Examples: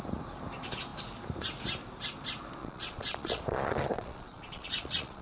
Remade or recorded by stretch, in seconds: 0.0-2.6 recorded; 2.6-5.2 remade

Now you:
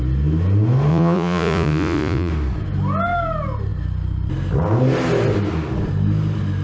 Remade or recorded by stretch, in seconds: 0.0-0.9 recorded; 0.9-2.3 remade; 2.3-6.6 recorded